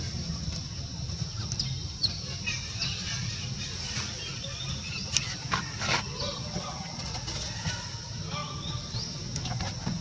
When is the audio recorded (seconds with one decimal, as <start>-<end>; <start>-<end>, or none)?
0.0-10.0